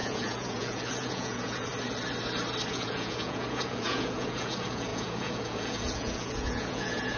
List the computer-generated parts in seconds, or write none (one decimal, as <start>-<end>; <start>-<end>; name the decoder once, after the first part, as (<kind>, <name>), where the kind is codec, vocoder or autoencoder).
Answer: 0.0-1.7 (vocoder, Vocos); 2.7-7.2